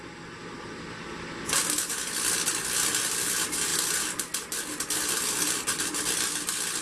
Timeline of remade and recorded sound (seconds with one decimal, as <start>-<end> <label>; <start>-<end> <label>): 0.0-6.8 recorded